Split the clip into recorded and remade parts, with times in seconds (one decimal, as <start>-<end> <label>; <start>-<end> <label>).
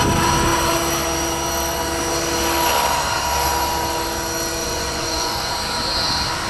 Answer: 0.0-4.6 recorded; 4.6-5.5 remade; 5.5-6.5 recorded